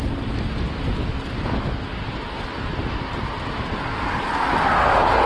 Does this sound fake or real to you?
real